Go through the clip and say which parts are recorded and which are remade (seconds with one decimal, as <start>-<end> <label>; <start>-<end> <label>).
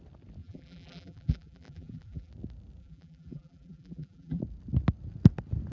0.0-0.4 recorded; 0.4-2.3 remade; 2.3-2.8 recorded; 2.8-4.4 remade; 4.4-5.7 recorded